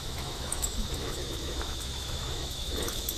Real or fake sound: fake